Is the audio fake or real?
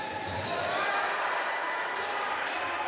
real